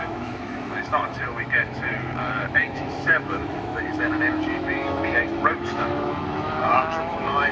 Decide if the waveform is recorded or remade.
remade